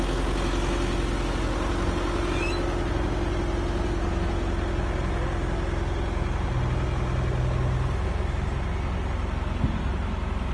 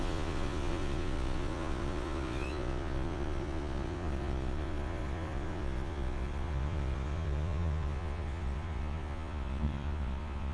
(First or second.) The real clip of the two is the first